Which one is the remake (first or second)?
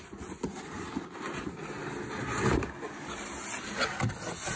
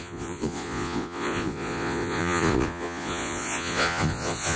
second